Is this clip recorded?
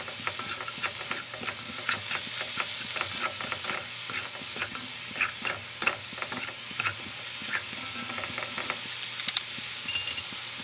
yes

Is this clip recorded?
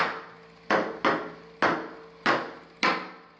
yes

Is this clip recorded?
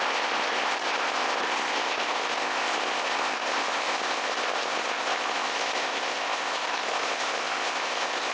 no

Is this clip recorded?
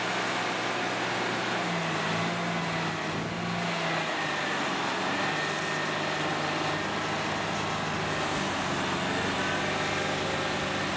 yes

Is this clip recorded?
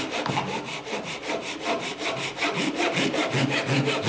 yes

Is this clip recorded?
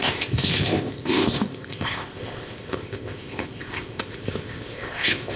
no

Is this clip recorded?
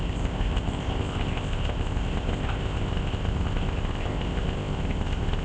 no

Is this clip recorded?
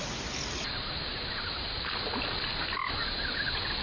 yes